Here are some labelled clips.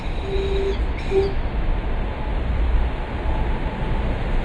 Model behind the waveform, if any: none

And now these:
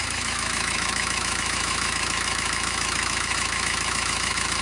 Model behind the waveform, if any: autoencoder, DAC-VAE